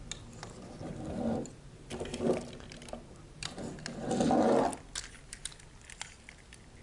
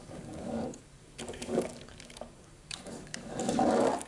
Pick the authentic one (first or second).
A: first